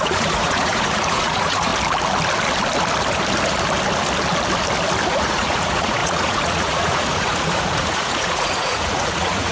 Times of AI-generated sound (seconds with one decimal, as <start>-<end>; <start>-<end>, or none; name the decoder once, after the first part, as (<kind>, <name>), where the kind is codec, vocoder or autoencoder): 0.0-1.7 (vocoder, Vocos); 5.1-9.5